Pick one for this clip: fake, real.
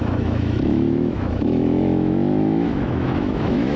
fake